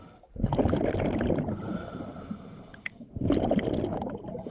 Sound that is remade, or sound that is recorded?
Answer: recorded